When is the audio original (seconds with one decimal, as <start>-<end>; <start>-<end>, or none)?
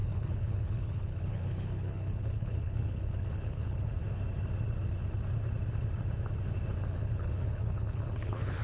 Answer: 4.0-6.9